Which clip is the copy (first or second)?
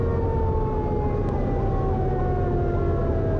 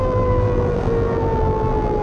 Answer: second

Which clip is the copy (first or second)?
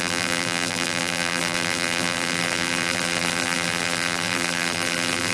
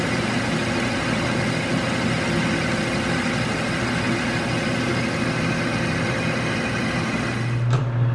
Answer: first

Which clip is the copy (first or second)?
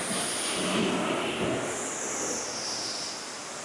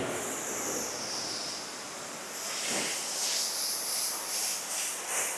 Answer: second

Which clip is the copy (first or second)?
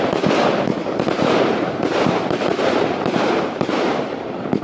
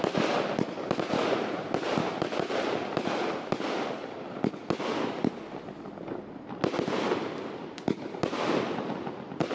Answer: first